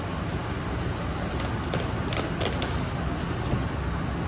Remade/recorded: recorded